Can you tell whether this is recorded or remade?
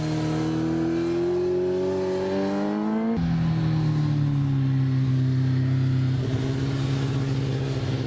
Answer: recorded